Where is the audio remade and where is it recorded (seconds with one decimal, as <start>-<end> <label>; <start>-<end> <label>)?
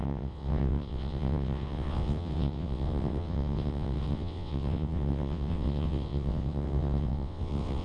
0.0-7.8 remade